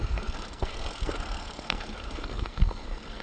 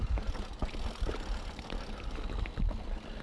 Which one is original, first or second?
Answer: second